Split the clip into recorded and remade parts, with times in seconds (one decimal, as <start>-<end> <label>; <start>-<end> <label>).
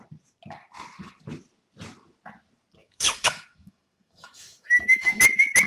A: 0.0-2.8 recorded; 2.8-5.2 remade; 5.2-5.7 recorded